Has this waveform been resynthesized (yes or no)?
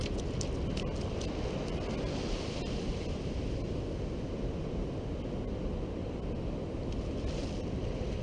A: no